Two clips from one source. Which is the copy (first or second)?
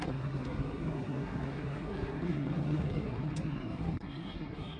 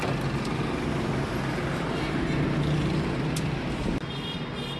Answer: first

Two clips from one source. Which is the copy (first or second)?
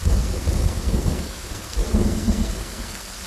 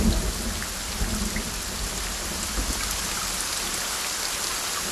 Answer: first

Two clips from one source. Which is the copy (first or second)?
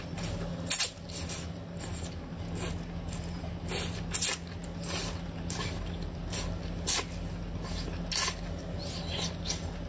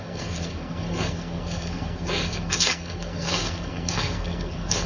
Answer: second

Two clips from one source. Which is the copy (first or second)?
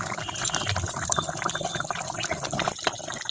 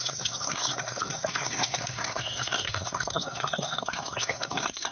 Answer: second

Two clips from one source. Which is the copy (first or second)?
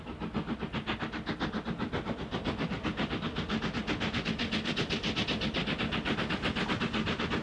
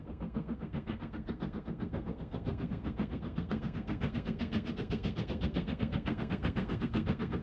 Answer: second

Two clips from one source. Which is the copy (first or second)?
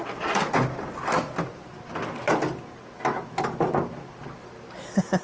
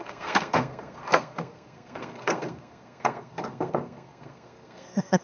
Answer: second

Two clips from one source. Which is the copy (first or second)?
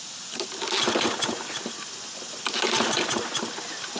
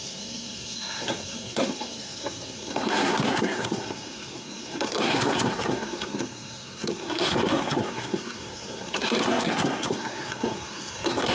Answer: second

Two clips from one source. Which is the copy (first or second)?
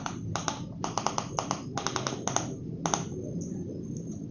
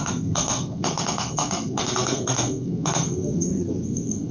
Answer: second